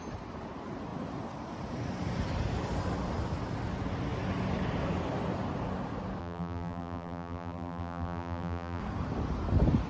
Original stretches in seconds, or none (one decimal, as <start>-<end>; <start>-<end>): 0.0-6.2; 8.8-9.9